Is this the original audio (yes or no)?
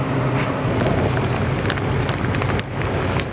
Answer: yes